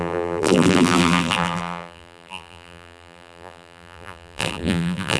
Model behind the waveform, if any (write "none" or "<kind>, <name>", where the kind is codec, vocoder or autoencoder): vocoder, BigVGAN v2